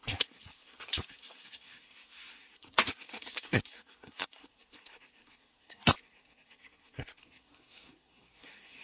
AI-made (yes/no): yes